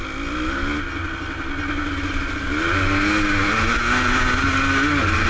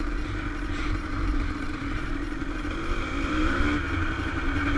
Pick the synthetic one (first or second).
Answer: second